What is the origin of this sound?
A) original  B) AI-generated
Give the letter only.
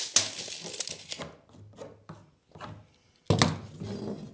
A